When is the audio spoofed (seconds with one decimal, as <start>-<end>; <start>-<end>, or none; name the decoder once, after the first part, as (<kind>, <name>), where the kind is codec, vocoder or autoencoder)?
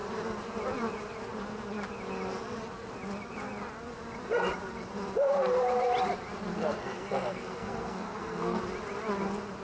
6.5-8.6 (codec, SNAC)